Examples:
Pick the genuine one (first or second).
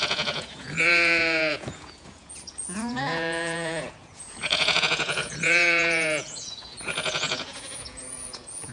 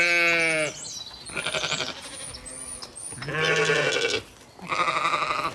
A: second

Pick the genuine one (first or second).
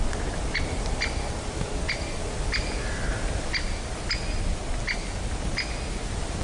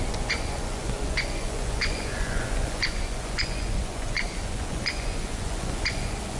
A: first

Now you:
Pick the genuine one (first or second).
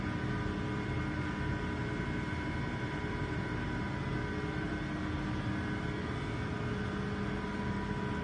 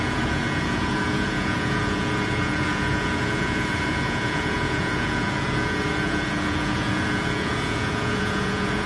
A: first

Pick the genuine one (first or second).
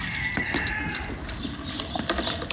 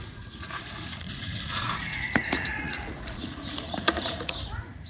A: first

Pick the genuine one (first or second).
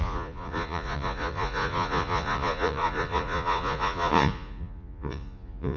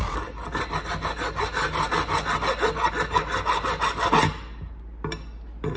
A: second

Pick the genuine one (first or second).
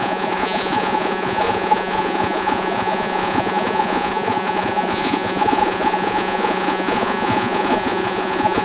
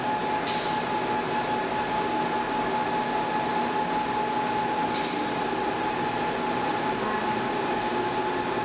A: second